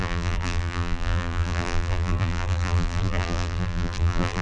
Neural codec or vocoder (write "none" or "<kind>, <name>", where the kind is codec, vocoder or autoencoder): vocoder, BigVGAN v2